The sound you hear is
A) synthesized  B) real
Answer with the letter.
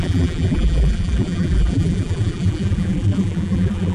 A